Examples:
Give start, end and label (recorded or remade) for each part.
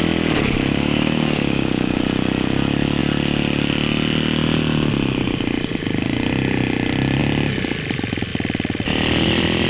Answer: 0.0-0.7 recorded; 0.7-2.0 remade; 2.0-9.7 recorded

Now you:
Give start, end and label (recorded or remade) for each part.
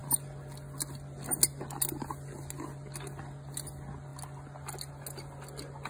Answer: 0.0-5.9 recorded